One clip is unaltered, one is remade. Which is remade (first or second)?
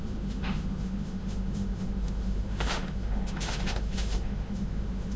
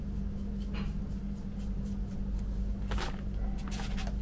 first